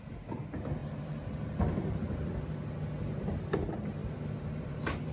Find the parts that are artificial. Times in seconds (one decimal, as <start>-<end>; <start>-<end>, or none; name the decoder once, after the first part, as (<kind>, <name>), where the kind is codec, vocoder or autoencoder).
0.0-2.2 (vocoder, BigVGAN v2); 3.4-4.0; 4.6-5.1